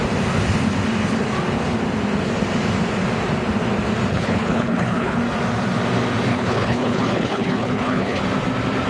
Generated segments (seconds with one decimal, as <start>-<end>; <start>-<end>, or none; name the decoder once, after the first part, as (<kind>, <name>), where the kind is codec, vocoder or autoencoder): 4.1-5.2 (codec, HILCodec); 6.3-8.2